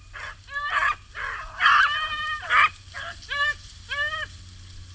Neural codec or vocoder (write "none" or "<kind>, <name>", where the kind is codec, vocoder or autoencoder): none